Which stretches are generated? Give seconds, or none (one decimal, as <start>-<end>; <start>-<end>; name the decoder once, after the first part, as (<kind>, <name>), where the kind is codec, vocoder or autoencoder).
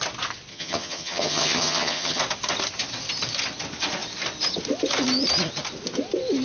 0.5-2.2 (vocoder, HiFi-GAN)